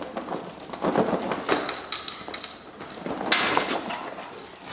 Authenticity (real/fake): real